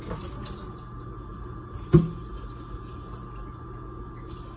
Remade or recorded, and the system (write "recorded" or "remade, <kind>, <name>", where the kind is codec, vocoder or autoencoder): recorded